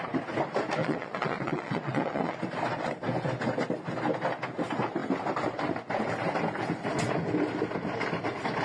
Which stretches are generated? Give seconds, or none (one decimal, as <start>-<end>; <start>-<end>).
0.8-2.4